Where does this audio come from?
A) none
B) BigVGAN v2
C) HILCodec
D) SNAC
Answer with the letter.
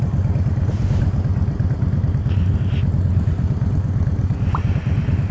A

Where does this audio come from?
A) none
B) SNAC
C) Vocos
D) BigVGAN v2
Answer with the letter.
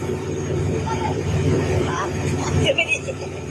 D